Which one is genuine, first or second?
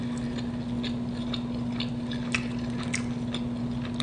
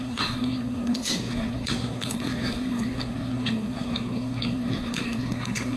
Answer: first